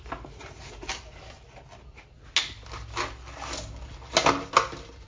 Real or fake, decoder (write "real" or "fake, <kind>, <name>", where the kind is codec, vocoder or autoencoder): real